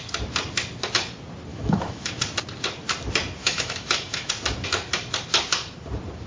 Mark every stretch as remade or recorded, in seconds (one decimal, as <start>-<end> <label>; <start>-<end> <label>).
0.0-1.5 recorded; 1.5-2.1 remade; 2.1-3.4 recorded; 3.4-4.3 remade; 4.3-6.3 recorded